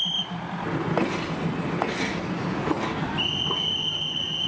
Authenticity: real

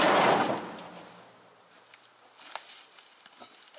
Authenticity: real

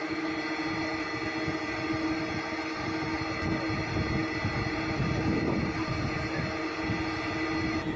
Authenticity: real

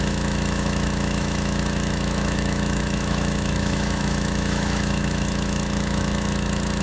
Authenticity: fake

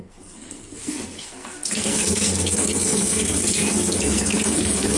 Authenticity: fake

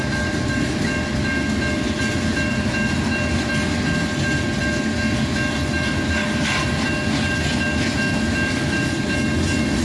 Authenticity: real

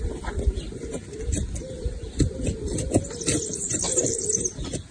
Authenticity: real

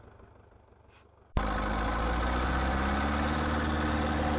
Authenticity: real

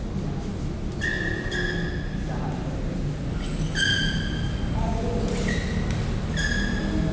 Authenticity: real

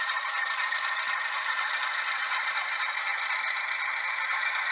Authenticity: fake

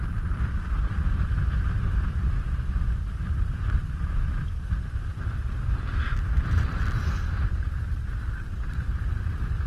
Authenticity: fake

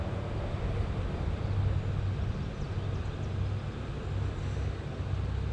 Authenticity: real